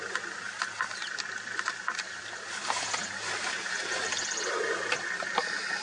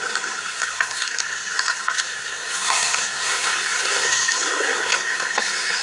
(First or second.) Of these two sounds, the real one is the first